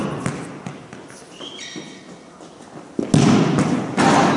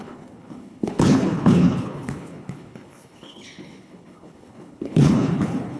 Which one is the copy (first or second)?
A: second